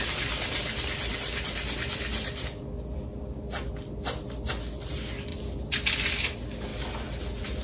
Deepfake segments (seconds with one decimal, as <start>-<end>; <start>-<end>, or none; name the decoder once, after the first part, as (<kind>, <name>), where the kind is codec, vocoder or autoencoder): 5.3-5.9 (vocoder, BigVGAN v2)